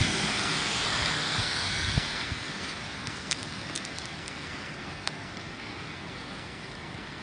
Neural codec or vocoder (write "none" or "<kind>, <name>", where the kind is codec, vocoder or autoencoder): codec, SNAC